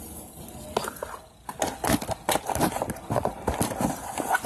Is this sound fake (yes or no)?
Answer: no